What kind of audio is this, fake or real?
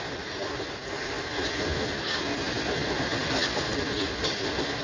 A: real